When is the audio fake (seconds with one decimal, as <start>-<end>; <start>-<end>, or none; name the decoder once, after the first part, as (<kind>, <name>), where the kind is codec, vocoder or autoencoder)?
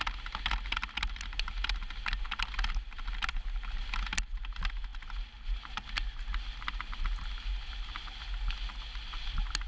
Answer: none